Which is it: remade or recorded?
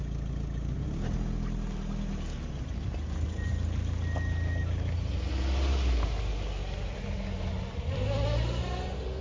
recorded